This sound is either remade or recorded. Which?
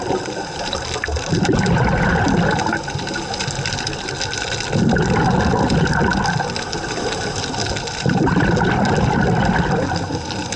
recorded